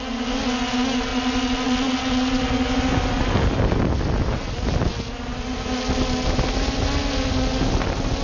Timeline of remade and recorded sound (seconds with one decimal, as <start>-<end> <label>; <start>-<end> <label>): 0.0-1.1 recorded; 1.1-2.4 remade; 2.4-8.2 recorded